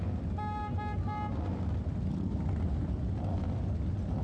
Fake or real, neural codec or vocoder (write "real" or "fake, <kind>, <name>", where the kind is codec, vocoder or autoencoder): real